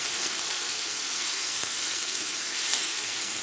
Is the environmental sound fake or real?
fake